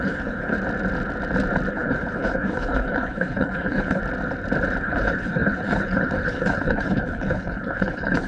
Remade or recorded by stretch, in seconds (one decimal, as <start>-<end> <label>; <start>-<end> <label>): 0.0-0.5 remade; 0.5-1.7 recorded; 1.7-4.0 remade; 4.0-4.8 recorded; 4.8-8.3 remade